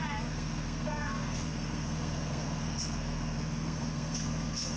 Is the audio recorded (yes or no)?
no